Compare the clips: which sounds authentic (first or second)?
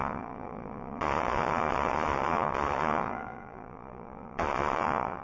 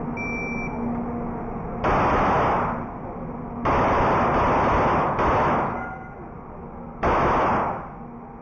second